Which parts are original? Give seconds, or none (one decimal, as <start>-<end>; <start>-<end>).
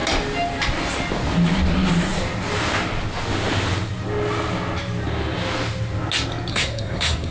0.0-6.5